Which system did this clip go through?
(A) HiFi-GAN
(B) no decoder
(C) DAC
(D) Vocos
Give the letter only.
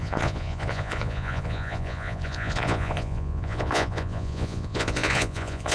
D